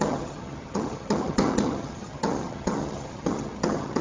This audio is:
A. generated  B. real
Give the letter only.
A